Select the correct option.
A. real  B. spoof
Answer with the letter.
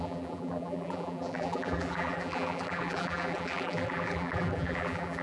B